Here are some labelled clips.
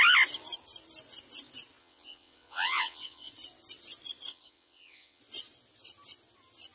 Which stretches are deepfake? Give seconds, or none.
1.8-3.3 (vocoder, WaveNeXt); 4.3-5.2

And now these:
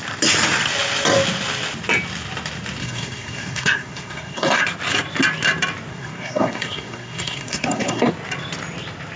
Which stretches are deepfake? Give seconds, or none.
2.8-4.6 (codec, SNAC); 5.9-8.1

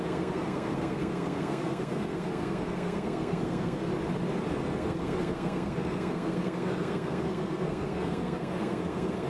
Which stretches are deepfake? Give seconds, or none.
0.0-3.9 (codec, SNAC); 4.5-9.3

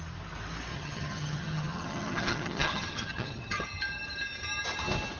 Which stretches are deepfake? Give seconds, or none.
0.7-3.8 (vocoder, HiFi-GAN)

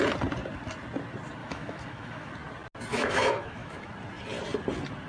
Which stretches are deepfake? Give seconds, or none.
1.4-2.3 (autoencoder, DAC-VAE); 2.9-3.9